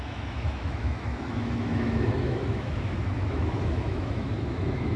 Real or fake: fake